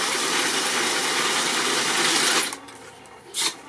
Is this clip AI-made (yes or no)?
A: no